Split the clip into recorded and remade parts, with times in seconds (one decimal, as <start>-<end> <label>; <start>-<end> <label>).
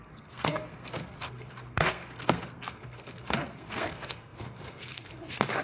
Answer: 0.0-5.6 remade